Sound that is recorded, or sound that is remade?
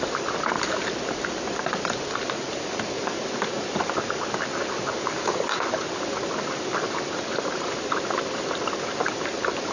remade